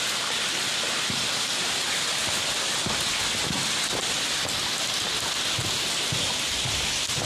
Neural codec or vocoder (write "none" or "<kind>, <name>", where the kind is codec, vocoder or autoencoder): none